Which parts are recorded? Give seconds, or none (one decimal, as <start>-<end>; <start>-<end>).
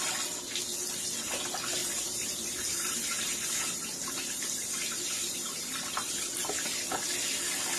0.0-1.8; 6.5-7.8